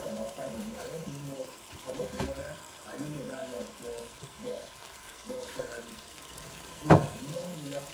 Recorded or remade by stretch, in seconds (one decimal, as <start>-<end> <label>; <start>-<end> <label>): 0.0-7.9 remade

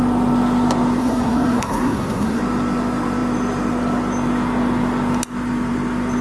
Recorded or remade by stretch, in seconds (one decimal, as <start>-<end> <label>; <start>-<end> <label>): 0.0-1.0 recorded; 1.0-2.4 remade; 2.4-6.2 recorded

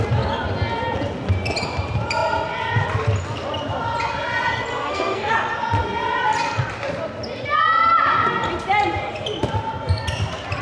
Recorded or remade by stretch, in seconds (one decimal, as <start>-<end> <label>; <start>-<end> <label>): 0.0-4.7 recorded; 4.7-5.3 remade; 5.3-10.6 recorded

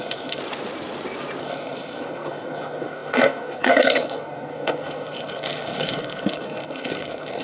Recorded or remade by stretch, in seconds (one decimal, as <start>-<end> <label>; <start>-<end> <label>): 0.0-0.4 remade; 0.4-1.4 recorded; 1.4-7.4 remade

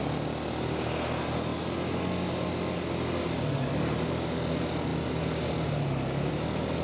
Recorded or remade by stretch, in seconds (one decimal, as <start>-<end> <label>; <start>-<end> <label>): 0.0-6.8 recorded

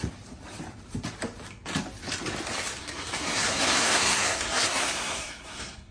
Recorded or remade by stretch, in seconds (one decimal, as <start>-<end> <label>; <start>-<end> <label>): 0.0-2.8 recorded; 2.8-5.9 remade